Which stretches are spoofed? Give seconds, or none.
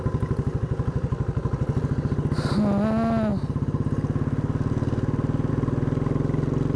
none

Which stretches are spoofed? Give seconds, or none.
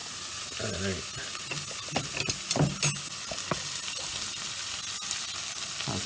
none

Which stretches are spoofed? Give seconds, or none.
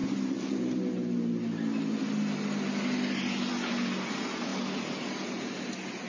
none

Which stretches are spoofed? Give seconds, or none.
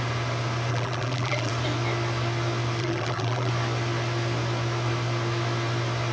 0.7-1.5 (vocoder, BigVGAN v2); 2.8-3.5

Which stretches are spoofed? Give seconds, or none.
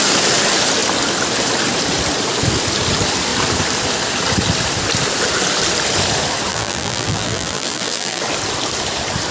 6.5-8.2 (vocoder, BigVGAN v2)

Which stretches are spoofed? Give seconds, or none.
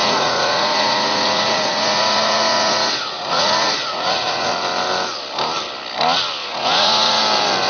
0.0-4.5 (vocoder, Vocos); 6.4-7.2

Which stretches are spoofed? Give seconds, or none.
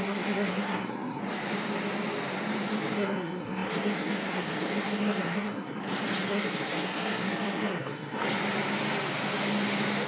0.0-1.2 (codec, SNAC); 2.7-5.8; 6.3-8.2